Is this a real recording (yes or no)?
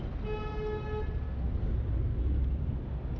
yes